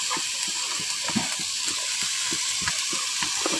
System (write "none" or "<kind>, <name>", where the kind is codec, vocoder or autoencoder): vocoder, BigVGAN v2